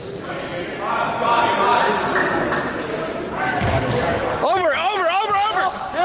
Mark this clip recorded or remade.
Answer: recorded